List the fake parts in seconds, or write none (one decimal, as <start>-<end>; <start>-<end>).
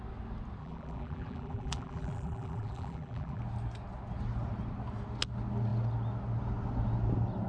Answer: 0.6-3.4